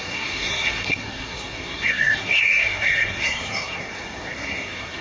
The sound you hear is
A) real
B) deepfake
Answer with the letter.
B